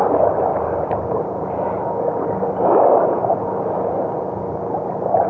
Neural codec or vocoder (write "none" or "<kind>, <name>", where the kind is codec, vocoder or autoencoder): none